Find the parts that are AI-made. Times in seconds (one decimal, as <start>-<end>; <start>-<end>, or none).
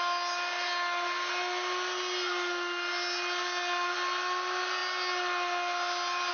none